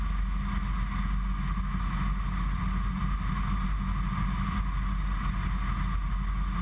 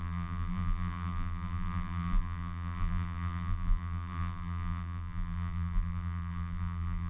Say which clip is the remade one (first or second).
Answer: second